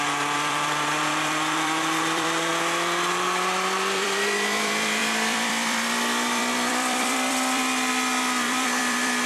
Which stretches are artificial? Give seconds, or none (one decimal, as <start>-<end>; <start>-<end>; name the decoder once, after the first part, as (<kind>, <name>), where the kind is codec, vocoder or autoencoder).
0.0-2.5 (vocoder, BigVGAN v2); 3.1-9.3